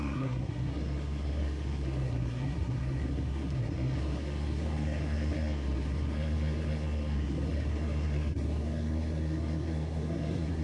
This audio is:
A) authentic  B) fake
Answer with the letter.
B